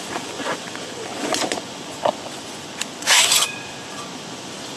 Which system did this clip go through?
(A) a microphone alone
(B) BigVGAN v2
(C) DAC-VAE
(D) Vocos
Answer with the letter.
D